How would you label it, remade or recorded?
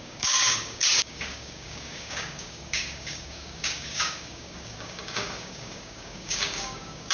remade